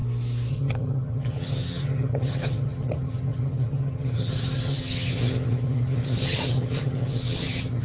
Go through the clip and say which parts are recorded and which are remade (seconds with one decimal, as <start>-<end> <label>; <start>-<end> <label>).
0.0-0.5 recorded; 0.5-7.8 remade